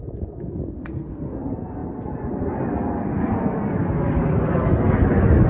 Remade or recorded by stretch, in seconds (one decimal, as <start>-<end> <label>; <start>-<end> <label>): 0.0-0.8 recorded; 0.8-1.3 remade; 1.3-5.5 recorded